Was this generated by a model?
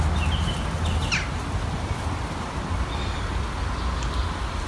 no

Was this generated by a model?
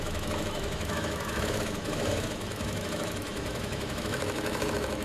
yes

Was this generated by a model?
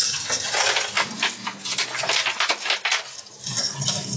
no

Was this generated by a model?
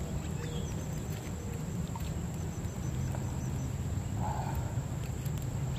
no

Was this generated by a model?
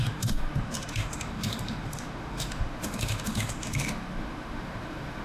yes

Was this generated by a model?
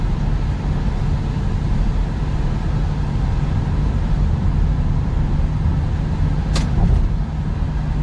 no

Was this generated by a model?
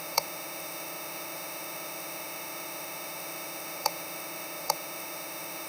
yes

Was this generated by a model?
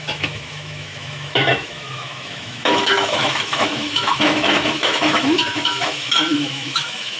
yes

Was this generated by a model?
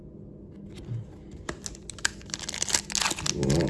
no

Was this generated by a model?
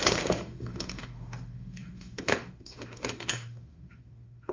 yes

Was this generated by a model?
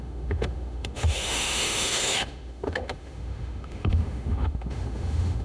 yes